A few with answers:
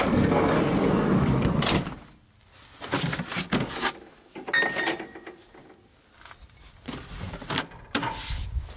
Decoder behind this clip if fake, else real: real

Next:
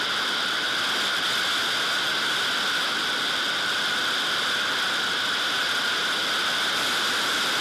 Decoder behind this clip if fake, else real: real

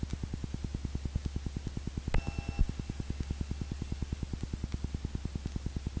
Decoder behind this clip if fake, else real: real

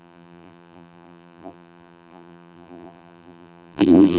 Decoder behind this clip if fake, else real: fake, vocoder, BigVGAN v2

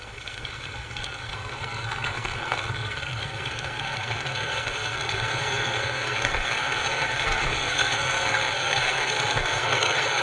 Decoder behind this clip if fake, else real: fake, codec, SNAC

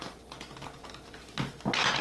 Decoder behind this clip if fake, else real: real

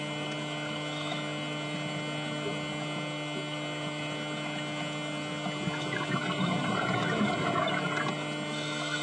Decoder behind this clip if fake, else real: real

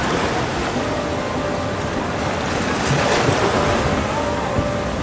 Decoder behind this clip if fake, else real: real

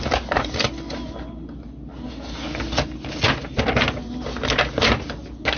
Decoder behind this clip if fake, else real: real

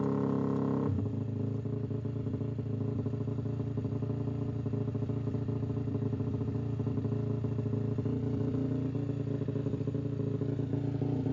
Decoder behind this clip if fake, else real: real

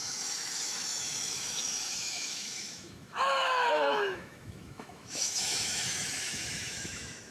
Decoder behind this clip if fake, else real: fake, autoencoder, DAC-VAE